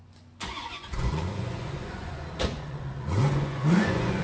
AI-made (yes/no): yes